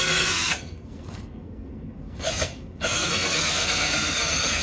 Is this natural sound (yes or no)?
no